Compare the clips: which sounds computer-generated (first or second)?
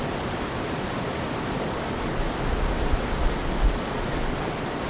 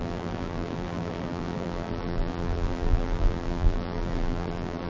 second